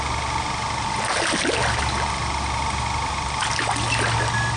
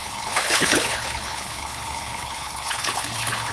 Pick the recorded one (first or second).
first